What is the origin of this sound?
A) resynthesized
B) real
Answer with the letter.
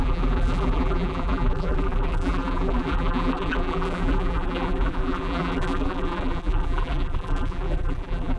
A